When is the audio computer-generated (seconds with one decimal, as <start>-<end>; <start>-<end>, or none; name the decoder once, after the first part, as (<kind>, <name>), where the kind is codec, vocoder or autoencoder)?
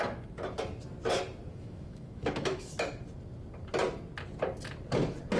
1.5-2.7 (autoencoder, DAC-VAE)